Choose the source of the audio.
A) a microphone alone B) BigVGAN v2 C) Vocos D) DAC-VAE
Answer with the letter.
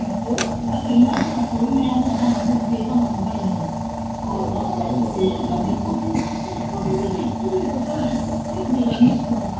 A